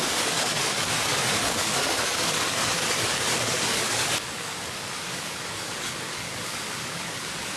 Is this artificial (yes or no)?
yes